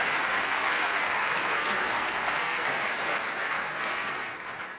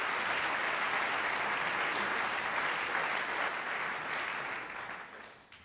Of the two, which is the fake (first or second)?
first